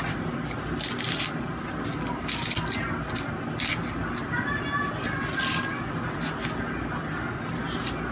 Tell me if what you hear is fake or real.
real